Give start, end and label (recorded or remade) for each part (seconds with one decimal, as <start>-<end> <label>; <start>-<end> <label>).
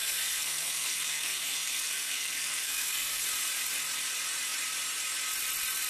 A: 0.0-3.2 remade; 3.2-5.9 recorded